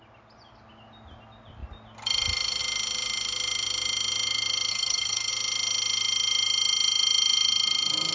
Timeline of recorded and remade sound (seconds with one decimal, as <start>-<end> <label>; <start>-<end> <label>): 0.0-4.7 recorded; 4.7-5.3 remade; 5.3-8.1 recorded